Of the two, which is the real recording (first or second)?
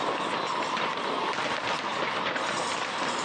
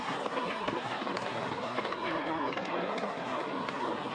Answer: first